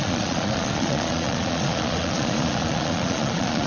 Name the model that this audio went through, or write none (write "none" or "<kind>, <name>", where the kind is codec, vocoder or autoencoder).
vocoder, Vocos